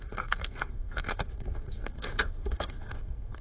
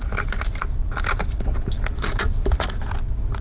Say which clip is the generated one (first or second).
first